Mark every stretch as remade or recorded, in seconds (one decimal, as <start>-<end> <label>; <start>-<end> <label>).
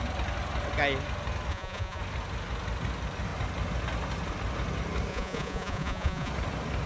0.0-1.5 recorded; 1.5-2.0 remade; 2.0-5.1 recorded; 5.1-6.3 remade; 6.3-6.9 recorded